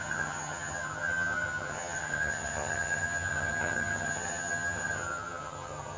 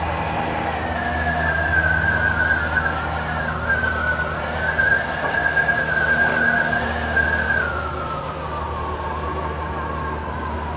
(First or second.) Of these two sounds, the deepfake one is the first